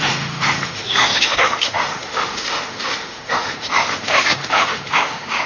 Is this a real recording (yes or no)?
no